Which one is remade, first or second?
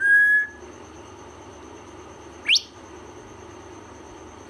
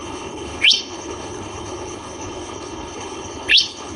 second